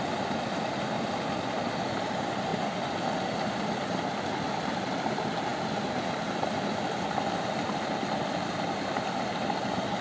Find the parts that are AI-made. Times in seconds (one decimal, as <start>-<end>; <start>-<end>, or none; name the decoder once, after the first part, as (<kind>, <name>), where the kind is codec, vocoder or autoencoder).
none